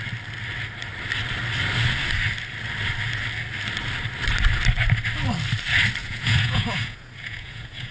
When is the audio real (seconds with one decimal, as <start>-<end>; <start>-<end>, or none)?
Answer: 0.0-6.0